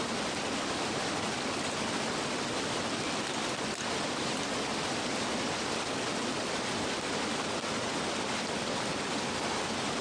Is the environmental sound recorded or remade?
recorded